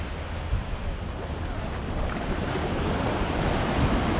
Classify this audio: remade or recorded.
recorded